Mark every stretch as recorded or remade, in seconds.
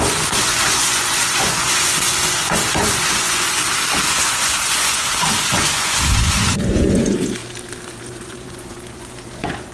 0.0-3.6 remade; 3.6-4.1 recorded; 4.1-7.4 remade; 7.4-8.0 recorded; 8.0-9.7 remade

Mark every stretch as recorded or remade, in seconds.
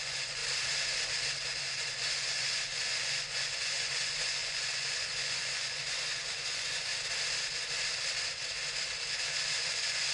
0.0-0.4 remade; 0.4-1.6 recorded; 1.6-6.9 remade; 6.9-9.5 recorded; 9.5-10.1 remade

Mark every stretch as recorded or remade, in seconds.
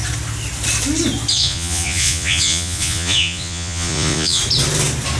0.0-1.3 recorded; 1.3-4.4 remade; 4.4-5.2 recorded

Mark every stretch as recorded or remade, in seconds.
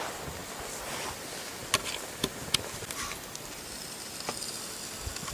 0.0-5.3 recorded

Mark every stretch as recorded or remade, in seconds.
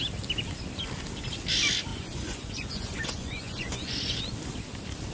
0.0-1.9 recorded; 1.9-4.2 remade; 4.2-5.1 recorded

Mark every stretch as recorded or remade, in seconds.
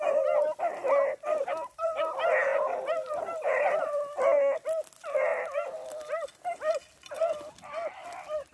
0.0-8.5 recorded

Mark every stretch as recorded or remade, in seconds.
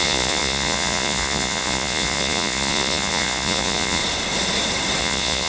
0.0-4.0 remade; 4.0-5.0 recorded; 5.0-5.5 remade